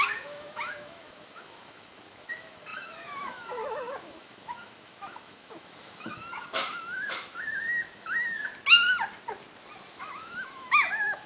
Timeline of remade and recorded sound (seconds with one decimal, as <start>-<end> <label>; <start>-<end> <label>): 0.0-8.5 remade; 8.5-9.9 recorded; 9.9-11.3 remade